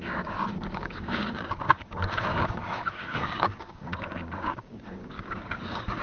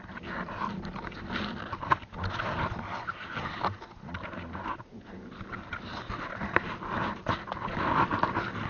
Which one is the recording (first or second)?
second